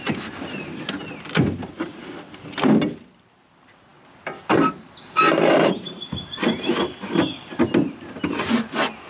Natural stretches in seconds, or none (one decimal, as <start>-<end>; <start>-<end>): 0.0-9.1